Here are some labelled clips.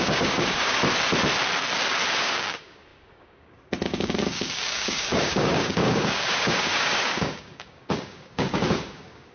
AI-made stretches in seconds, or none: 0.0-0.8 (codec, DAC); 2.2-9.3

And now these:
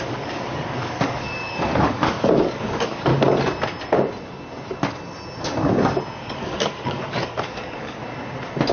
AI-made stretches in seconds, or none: 0.0-3.1 (codec, DAC); 6.2-8.0

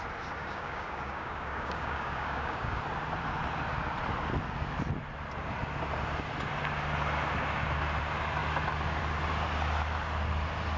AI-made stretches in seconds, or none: 0.4-2.8 (codec, DAC)

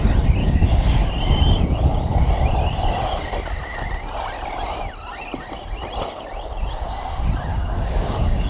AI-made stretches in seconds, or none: 0.4-1.1 (codec, DAC); 7.5-8.5

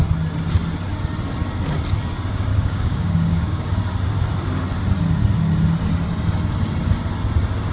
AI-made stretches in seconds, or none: 2.5-3.7 (codec, DAC)

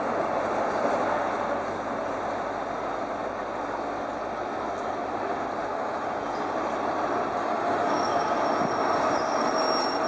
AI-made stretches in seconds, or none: 5.7-6.2 (codec, DAC); 7.4-8.4

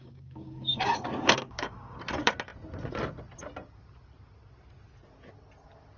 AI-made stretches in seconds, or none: 0.0-2.0 (codec, DAC)

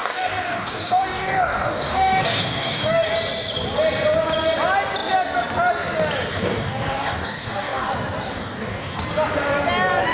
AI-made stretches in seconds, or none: 0.0-3.1 (codec, DAC); 6.3-7.9; 8.3-9.0